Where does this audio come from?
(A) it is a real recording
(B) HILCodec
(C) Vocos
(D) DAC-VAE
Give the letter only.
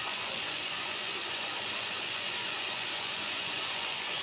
C